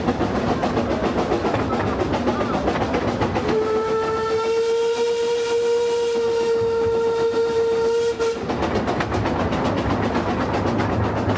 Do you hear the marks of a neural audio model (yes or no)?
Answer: no